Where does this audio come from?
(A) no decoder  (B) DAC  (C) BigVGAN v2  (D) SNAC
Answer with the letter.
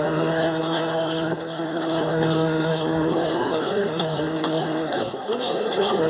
D